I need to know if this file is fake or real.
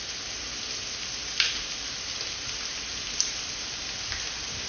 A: real